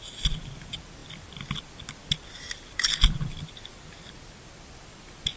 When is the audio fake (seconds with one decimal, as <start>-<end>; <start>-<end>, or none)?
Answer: none